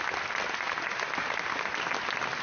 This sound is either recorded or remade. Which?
recorded